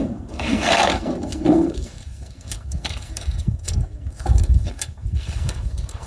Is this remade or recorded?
remade